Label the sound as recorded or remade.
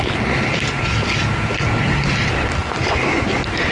recorded